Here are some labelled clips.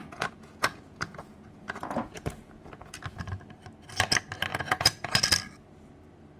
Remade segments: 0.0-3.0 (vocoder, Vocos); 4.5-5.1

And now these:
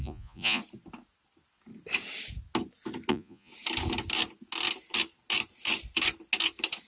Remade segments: 0.0-0.6 (vocoder, Vocos); 3.1-3.5

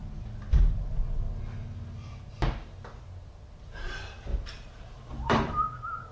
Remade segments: 4.3-6.1 (vocoder, BigVGAN v2)

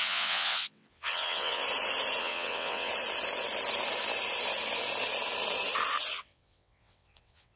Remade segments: 0.0-1.6 (vocoder, WaveNeXt); 2.2-2.9; 6.1-7.6

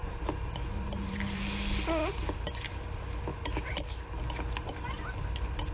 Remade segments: 0.0-1.4 (vocoder, BigVGAN v2); 2.0-2.5; 3.3-4.1

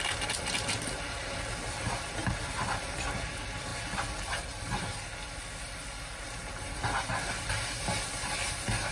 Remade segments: none